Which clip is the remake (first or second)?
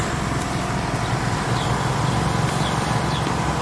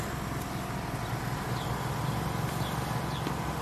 first